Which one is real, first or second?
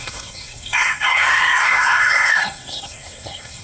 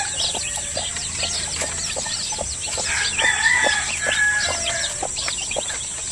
second